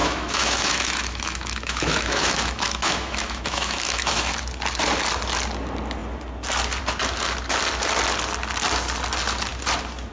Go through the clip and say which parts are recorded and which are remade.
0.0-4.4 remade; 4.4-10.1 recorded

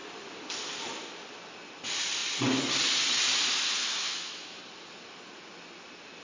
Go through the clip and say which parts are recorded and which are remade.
0.0-3.8 recorded; 3.8-4.6 remade; 4.6-6.2 recorded

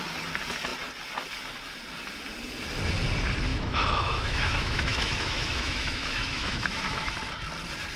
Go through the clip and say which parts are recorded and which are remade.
0.0-3.5 recorded; 3.5-7.1 remade; 7.1-8.0 recorded

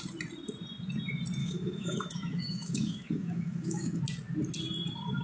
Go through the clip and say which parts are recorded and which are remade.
0.0-1.4 recorded; 1.4-4.0 remade; 4.0-5.2 recorded

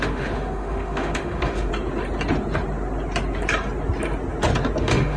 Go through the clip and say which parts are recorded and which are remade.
0.0-1.7 remade; 1.7-4.8 recorded; 4.8-5.2 remade